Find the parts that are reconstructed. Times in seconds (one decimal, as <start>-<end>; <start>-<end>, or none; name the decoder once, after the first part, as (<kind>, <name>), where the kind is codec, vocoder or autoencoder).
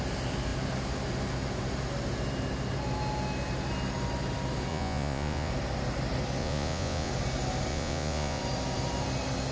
4.7-5.5 (vocoder, Vocos); 6.4-7.1; 7.7-8.4